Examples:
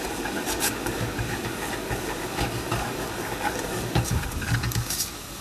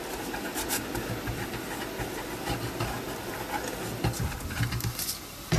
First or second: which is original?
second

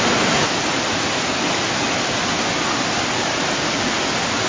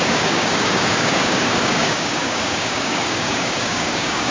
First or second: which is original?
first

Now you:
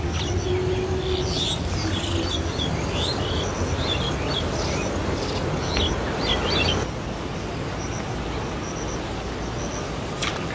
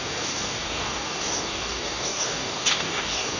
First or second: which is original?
first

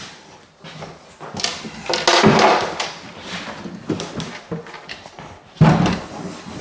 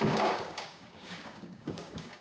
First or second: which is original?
first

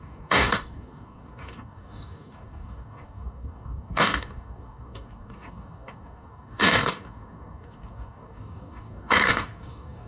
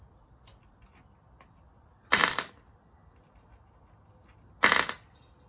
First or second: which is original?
second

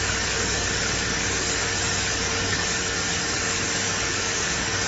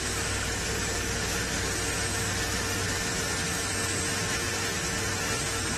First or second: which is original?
second